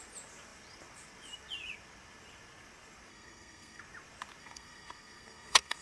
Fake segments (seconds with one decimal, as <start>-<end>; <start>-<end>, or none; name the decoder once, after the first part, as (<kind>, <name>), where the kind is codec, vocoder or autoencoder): 3.1-3.8 (codec, SNAC); 4.4-5.8